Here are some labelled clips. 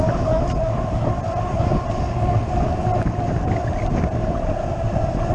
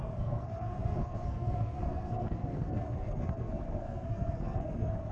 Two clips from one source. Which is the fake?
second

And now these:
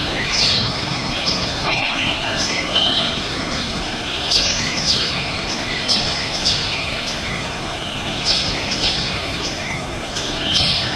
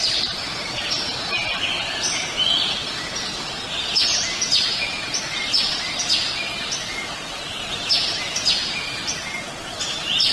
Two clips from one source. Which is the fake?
first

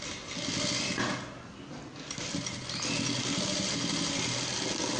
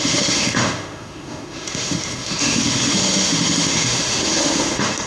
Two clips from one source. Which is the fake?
second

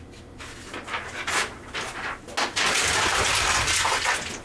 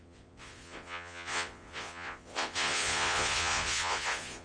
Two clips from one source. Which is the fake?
second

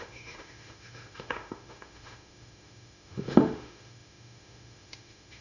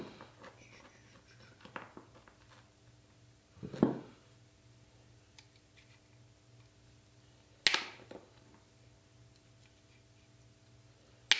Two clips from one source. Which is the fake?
first